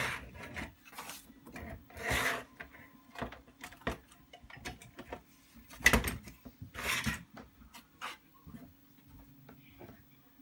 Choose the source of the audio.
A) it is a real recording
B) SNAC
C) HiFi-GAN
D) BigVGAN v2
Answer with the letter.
A